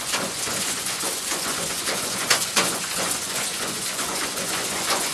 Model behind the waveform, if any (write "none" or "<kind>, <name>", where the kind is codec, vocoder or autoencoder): vocoder, Vocos